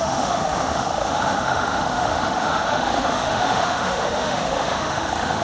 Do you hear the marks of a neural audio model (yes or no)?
yes